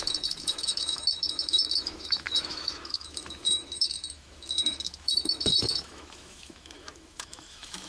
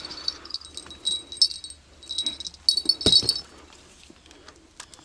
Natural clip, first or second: second